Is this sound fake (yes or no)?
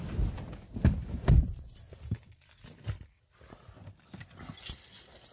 no